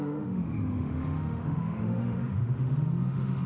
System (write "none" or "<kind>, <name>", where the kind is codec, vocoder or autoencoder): autoencoder, DAC-VAE